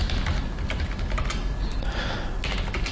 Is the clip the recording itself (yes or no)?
yes